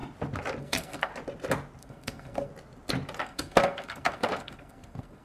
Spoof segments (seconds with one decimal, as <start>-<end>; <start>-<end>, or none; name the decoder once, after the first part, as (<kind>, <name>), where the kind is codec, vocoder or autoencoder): 0.6-1.1 (codec, SNAC); 1.8-2.5; 3.2-5.2